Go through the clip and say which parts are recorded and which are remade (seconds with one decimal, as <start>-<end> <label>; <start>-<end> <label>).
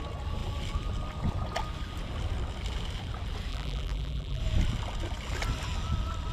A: 0.0-3.5 recorded; 3.5-4.4 remade; 4.4-6.3 recorded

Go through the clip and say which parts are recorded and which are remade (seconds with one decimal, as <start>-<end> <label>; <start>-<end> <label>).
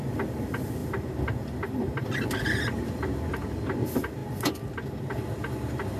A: 0.0-6.0 recorded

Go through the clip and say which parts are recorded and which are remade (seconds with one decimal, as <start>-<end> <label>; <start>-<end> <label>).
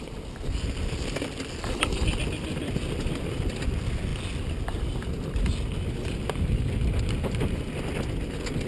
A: 0.0-8.7 recorded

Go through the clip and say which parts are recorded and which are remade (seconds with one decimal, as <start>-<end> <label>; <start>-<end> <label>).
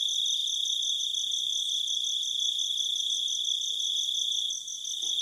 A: 0.0-1.5 recorded; 1.5-3.0 remade; 3.0-5.2 recorded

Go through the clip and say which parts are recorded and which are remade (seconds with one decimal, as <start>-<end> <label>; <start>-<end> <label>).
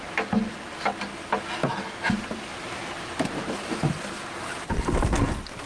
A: 0.0-2.5 recorded; 2.5-4.2 remade; 4.2-5.7 recorded